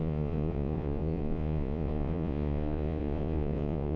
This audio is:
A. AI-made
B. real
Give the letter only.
A